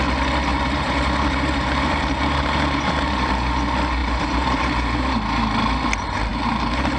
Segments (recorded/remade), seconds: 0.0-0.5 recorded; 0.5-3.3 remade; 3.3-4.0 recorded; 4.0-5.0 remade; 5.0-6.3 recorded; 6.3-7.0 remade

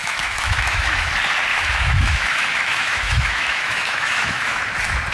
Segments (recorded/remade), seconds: 0.0-1.1 remade; 1.1-1.5 recorded; 1.5-4.6 remade; 4.6-5.1 recorded

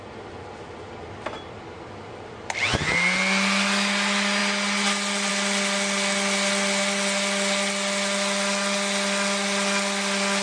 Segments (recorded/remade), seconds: 0.0-10.4 recorded

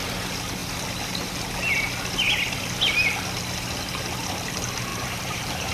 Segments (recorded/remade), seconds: 0.0-4.9 recorded; 4.9-5.7 remade

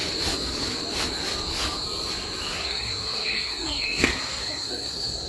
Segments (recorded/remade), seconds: 0.0-2.5 recorded; 2.5-5.3 remade

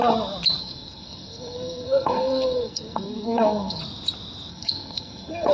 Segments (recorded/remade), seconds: 0.0-0.6 recorded; 0.6-3.8 remade; 3.8-4.5 recorded; 4.5-5.5 remade

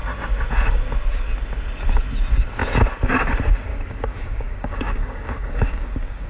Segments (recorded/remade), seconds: 0.0-3.7 recorded; 3.7-6.3 remade

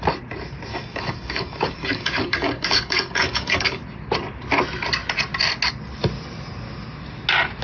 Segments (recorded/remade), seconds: 0.0-0.7 recorded; 0.7-3.8 remade; 3.8-7.6 recorded